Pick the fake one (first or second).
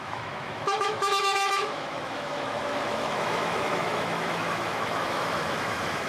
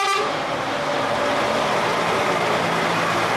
first